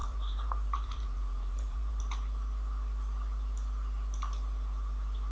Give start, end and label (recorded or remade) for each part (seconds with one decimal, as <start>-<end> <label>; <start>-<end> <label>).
0.0-2.0 remade; 2.0-5.3 recorded